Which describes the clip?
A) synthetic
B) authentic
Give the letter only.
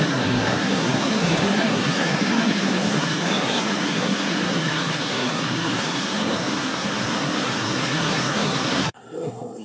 A